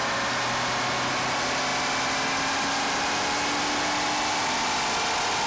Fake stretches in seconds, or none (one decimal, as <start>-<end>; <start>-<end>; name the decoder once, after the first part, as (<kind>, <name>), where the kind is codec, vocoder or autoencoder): none